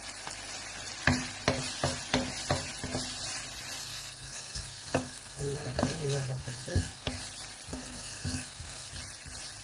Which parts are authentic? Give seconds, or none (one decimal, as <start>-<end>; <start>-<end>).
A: 0.0-3.8; 7.1-7.7; 8.9-9.6